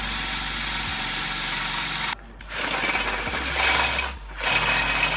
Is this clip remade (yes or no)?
no